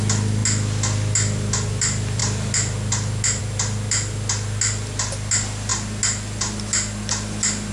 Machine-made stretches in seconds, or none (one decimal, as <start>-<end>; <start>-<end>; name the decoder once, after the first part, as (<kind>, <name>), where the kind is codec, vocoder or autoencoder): none